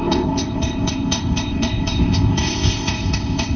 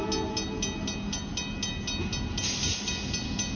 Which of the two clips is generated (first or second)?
first